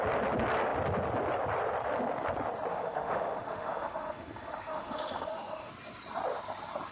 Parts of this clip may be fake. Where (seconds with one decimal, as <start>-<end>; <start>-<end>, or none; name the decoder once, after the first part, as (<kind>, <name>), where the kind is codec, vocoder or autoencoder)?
2.7-5.7 (autoencoder, DAC-VAE)